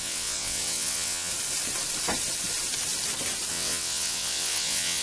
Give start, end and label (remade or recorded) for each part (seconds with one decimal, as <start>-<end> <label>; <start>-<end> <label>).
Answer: 0.0-1.3 remade; 1.3-3.5 recorded; 3.5-5.0 remade